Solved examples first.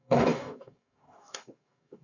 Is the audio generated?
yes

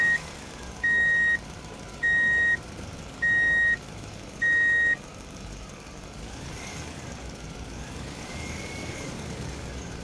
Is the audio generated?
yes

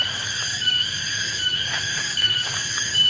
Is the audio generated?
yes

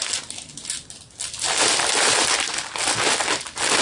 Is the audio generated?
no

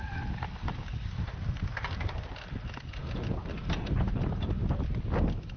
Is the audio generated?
no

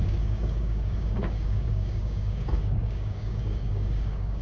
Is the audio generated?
yes